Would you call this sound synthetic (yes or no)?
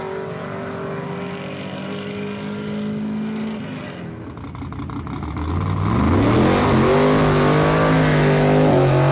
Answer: no